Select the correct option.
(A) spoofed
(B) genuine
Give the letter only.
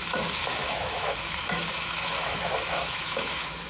A